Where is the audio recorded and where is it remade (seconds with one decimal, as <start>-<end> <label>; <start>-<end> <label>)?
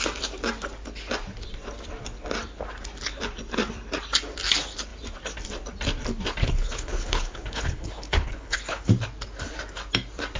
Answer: 0.0-6.4 recorded; 6.4-8.9 remade; 8.9-10.4 recorded